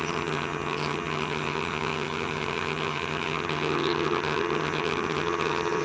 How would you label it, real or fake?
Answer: fake